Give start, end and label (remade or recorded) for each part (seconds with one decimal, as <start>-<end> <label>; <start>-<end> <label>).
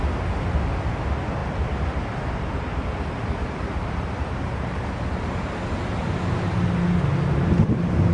0.0-8.1 recorded